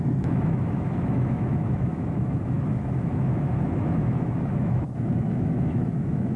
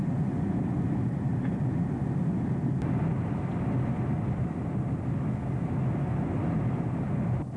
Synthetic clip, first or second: first